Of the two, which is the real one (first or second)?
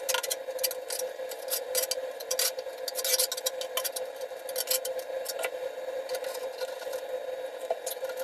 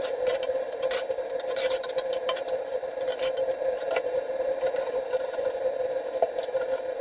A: first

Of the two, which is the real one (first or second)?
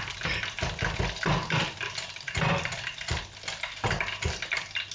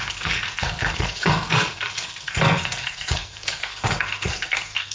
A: first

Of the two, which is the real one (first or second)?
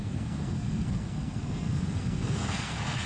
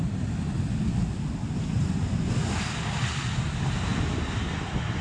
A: second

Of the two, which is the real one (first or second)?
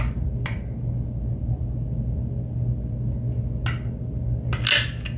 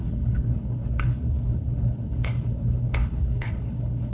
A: first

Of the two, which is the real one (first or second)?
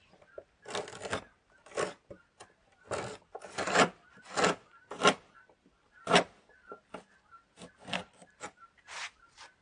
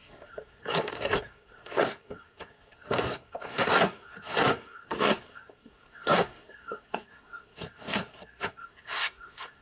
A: first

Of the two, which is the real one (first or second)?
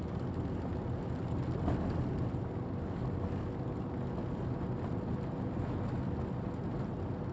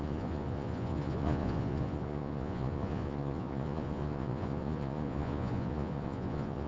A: first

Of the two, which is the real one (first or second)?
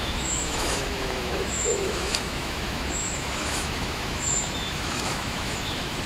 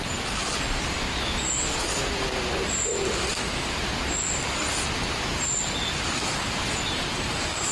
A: second